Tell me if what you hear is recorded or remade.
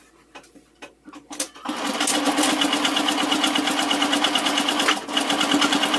recorded